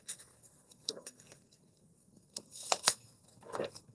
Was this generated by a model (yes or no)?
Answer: yes